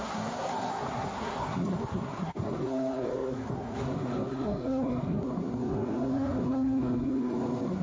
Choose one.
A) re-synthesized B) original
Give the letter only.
A